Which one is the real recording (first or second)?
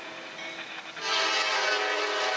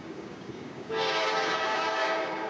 first